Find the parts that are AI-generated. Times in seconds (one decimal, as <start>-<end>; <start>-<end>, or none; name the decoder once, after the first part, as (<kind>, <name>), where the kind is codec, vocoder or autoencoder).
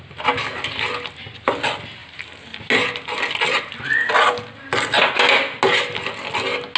none